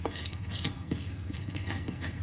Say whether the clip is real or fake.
fake